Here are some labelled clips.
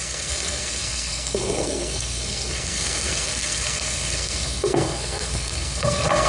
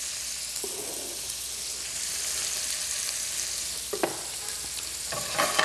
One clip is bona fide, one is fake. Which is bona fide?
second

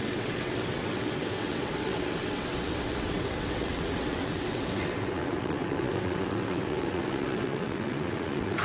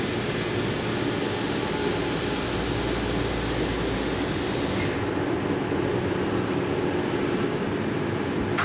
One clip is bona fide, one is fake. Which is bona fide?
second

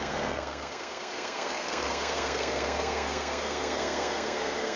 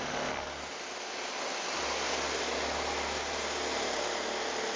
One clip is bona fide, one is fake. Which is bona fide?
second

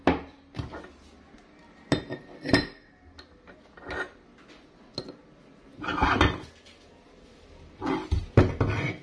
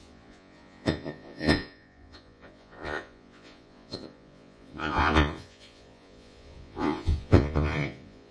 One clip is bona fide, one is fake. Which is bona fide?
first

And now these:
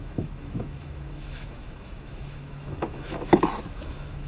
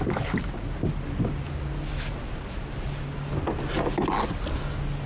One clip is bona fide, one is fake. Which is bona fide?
second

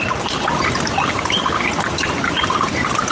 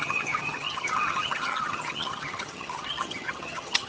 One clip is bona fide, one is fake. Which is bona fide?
first